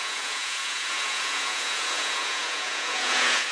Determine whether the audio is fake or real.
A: fake